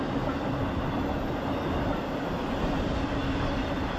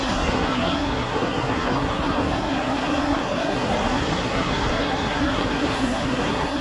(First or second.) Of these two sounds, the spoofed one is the second